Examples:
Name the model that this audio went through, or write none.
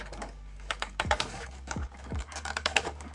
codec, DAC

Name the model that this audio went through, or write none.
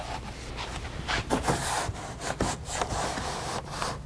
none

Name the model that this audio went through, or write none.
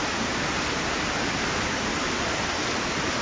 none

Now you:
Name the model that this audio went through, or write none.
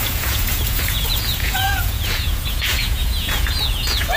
vocoder, Vocos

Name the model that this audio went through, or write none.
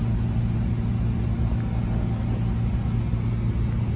none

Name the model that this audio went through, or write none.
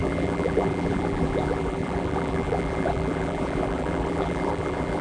vocoder, BigVGAN v2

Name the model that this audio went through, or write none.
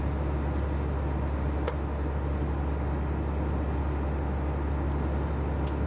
none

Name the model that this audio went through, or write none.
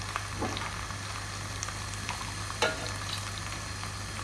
none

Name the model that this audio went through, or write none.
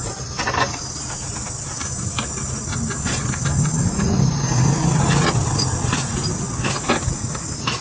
none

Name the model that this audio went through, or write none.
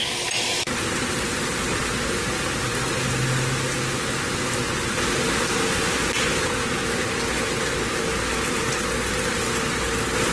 none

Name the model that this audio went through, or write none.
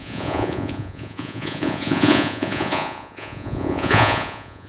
vocoder, Vocos